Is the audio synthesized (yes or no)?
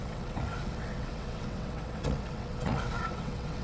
yes